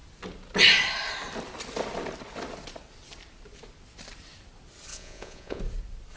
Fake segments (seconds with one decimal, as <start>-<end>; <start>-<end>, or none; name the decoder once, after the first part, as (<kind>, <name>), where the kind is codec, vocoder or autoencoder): 4.9-5.6 (vocoder, Vocos)

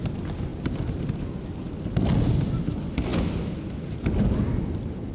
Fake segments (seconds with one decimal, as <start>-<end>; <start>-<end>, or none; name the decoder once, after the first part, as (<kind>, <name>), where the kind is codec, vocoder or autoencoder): none

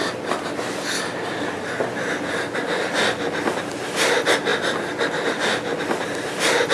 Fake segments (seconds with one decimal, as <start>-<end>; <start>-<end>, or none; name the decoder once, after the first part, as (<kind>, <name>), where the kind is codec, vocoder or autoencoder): none